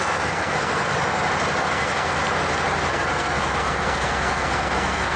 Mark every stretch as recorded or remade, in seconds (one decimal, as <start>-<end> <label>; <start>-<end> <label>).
0.0-0.9 remade; 0.9-1.6 recorded; 1.6-2.2 remade; 2.2-2.9 recorded; 2.9-5.2 remade